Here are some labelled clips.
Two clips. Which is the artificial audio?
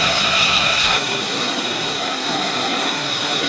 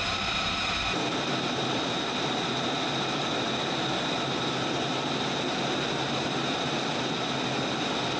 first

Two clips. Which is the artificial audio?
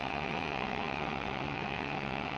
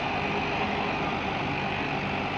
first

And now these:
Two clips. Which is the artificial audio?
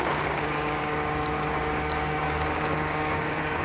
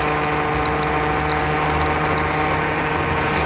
first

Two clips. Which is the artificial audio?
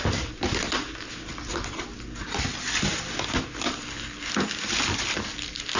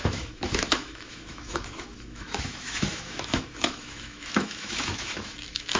second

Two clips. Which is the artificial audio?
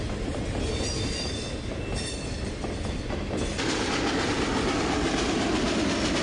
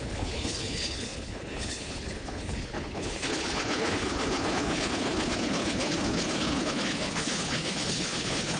second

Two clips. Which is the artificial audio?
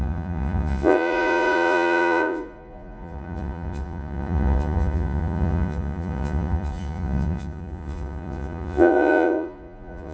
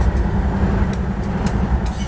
first